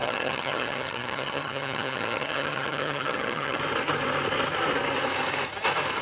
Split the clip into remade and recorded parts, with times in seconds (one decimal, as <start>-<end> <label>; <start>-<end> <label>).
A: 0.0-3.6 remade; 3.6-6.0 recorded